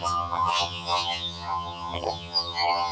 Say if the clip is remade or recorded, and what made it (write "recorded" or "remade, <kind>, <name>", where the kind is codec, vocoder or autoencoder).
remade, vocoder, HiFi-GAN